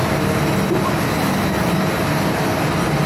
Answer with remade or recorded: recorded